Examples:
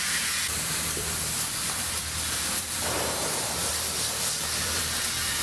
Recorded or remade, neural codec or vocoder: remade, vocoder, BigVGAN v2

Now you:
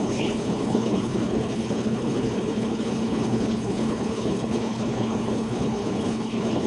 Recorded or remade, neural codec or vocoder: remade, codec, HILCodec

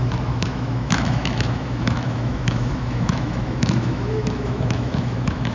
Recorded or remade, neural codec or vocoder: remade, autoencoder, DAC-VAE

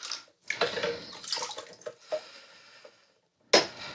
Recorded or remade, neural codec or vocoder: recorded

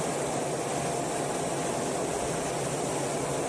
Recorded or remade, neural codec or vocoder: recorded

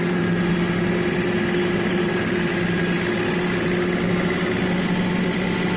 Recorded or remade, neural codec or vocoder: recorded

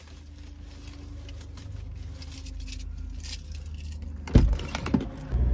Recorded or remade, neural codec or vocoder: recorded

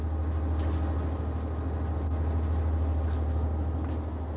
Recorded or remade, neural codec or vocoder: recorded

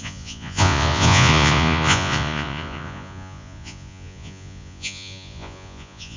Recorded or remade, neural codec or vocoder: remade, vocoder, Vocos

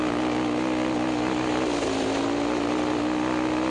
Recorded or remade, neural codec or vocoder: recorded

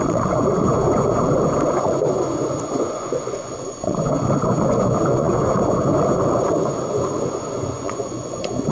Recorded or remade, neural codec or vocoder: remade, vocoder, Vocos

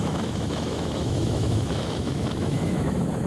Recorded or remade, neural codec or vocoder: remade, autoencoder, DAC-VAE